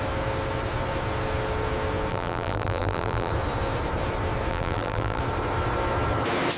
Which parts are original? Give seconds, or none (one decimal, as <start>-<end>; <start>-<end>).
0.0-2.1; 3.3-4.5; 5.2-6.6